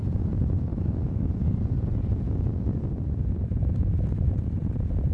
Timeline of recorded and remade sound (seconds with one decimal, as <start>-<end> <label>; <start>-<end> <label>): 0.0-0.7 recorded; 0.7-1.3 remade; 1.3-5.1 recorded